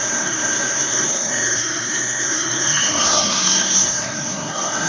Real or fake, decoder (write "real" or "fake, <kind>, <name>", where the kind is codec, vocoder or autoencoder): fake, codec, SNAC